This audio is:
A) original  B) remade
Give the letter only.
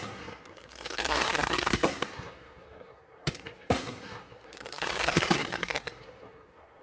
B